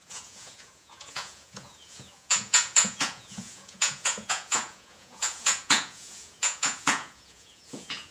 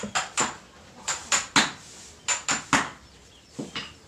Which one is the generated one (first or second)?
first